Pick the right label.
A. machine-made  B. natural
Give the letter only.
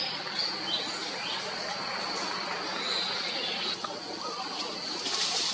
B